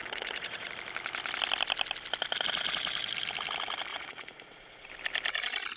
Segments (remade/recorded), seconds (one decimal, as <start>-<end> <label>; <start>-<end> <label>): 0.0-0.7 remade; 0.7-3.9 recorded; 3.9-4.9 remade; 4.9-5.8 recorded

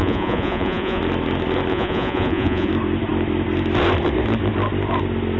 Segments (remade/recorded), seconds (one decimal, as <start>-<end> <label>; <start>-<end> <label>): 0.0-1.0 remade; 1.0-1.7 recorded; 1.7-2.7 remade; 2.7-5.4 recorded

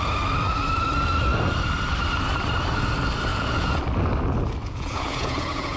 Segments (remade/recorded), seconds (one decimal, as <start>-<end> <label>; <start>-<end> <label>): 0.0-3.3 recorded; 3.3-3.8 remade; 3.8-4.6 recorded; 4.6-5.8 remade

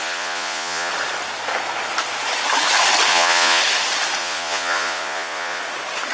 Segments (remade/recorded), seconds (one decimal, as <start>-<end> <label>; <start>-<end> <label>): 0.0-0.9 remade; 0.9-3.1 recorded; 3.1-3.6 remade; 3.6-4.2 recorded; 4.2-5.6 remade; 5.6-6.1 recorded

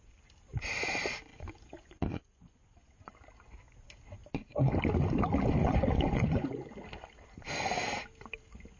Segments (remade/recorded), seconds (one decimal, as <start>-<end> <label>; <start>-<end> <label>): 0.0-1.3 recorded; 1.3-3.1 remade; 3.1-5.6 recorded; 5.6-6.5 remade; 6.5-8.8 recorded